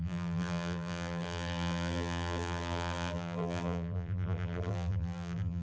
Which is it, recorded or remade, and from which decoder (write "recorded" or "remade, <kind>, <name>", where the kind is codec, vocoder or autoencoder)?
remade, vocoder, BigVGAN v2